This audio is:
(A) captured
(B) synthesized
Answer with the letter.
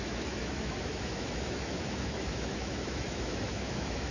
B